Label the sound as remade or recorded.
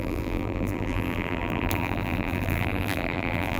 remade